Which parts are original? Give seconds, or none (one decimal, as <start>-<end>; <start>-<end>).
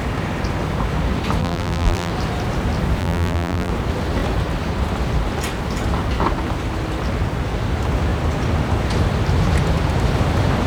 0.0-1.4; 2.1-3.0; 3.7-10.7